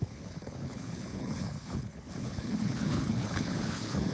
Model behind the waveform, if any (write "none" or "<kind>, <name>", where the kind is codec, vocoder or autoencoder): codec, HILCodec